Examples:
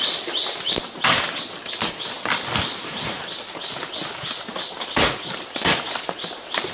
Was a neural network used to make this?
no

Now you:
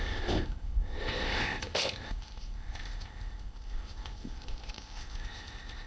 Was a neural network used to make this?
yes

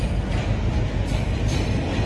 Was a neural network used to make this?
no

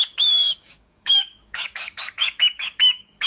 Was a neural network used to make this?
yes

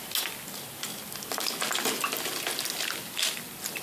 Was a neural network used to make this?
no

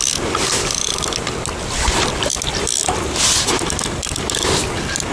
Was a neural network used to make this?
no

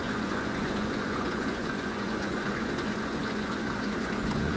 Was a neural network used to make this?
yes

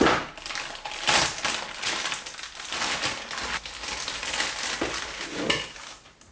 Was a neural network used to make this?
no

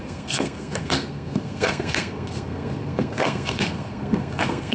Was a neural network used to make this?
yes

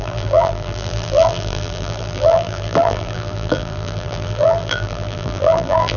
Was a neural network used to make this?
yes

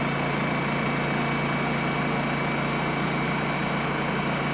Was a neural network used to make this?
no